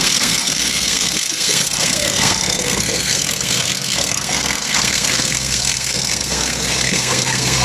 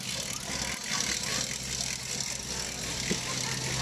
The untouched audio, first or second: second